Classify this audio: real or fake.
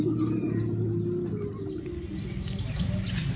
real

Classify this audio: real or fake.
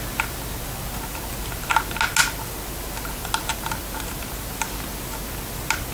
real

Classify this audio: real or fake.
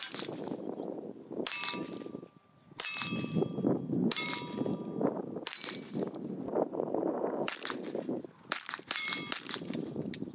fake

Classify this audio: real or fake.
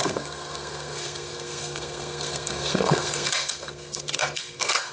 fake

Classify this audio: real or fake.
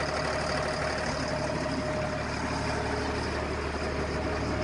real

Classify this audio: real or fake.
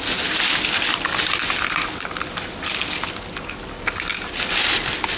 real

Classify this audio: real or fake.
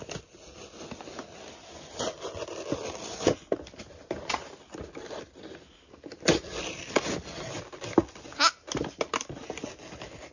real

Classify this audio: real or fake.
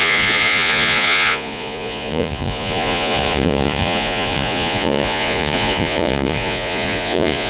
fake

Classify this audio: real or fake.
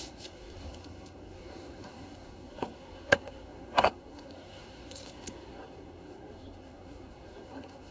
fake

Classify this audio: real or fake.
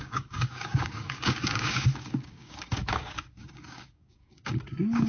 fake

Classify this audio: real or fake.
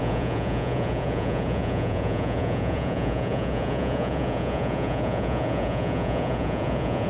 fake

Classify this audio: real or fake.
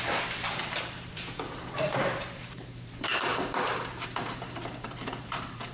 fake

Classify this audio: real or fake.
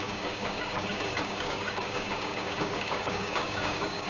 fake